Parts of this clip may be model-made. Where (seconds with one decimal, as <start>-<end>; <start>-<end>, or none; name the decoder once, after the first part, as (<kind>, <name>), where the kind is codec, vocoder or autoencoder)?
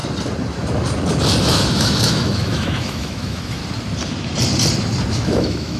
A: 1.4-3.6 (autoencoder, DAC-VAE); 5.1-5.8